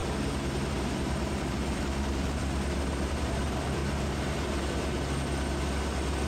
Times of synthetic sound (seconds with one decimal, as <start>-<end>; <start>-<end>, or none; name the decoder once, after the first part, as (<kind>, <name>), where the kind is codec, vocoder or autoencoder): 0.8-2.4 (vocoder, BigVGAN v2); 3.1-3.8